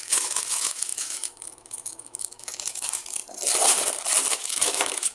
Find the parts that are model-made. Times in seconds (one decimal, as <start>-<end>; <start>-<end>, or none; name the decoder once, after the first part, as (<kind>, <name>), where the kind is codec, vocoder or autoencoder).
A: 0.0-3.2 (autoencoder, DAC-VAE); 4.3-5.1